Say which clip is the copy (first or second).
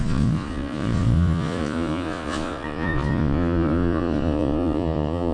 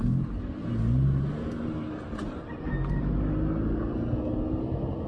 first